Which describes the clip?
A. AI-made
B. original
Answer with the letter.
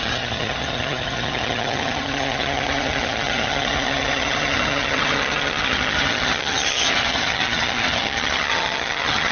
A